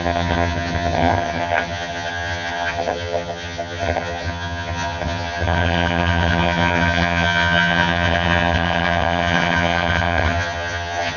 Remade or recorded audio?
remade